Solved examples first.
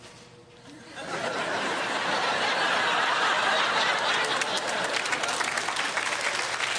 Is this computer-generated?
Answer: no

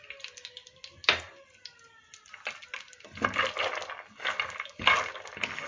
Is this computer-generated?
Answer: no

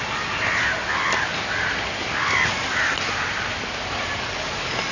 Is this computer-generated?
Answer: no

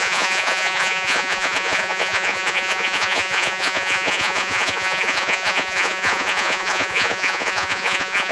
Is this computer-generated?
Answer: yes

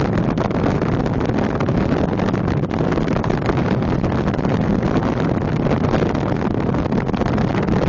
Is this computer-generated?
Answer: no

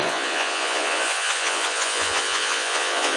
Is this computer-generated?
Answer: yes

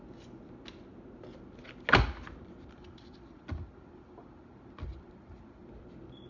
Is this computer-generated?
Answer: no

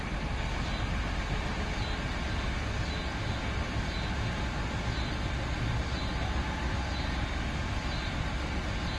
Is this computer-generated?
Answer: no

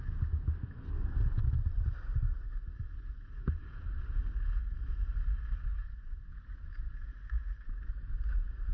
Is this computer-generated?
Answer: no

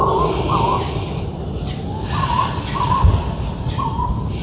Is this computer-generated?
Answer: no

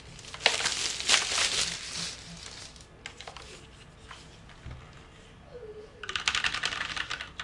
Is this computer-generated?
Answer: no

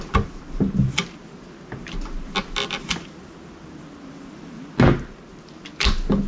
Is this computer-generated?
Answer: no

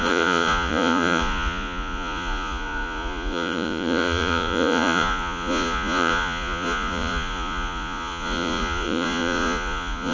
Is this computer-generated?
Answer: yes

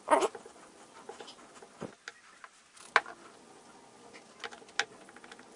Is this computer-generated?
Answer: no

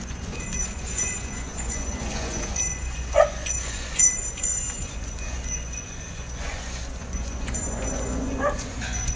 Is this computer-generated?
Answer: yes